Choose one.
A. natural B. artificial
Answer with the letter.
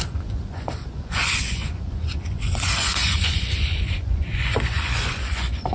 B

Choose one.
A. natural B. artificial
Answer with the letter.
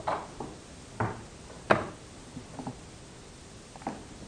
A